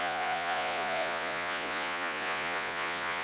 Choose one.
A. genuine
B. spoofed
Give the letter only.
B